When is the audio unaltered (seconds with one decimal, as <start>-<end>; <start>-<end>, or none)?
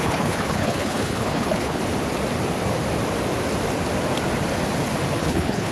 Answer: 1.8-5.2